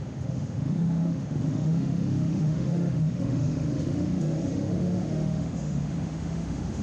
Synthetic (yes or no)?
yes